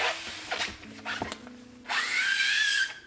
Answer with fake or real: real